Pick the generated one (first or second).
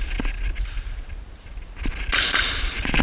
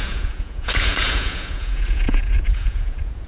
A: second